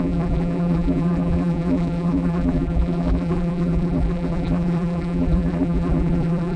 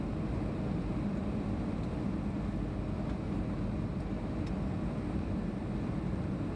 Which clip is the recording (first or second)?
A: second